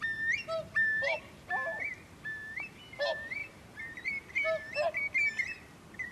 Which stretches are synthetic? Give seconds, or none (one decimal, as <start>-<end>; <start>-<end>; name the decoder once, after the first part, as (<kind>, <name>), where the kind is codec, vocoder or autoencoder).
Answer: none